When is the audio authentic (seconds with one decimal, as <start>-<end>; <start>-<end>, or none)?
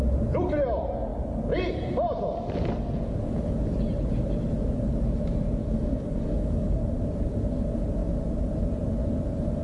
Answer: 0.0-5.6; 6.8-9.6